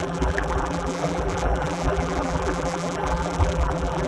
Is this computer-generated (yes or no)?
yes